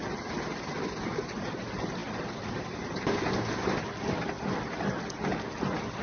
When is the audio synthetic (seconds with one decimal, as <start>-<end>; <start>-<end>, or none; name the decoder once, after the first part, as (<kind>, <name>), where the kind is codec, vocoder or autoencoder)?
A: none